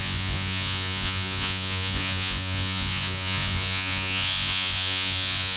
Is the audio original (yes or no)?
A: no